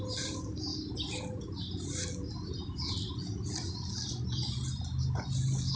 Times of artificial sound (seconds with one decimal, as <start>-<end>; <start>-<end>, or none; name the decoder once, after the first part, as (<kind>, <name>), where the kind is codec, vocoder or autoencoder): 2.5-3.9 (vocoder, BigVGAN v2)